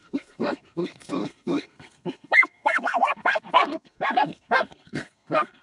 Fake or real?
fake